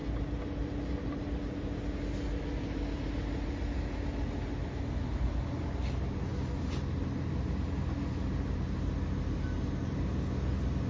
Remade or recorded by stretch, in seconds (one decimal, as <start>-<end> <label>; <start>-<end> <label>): 0.0-10.9 recorded